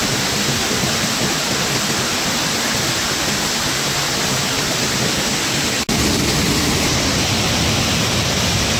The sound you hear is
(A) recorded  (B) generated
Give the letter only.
A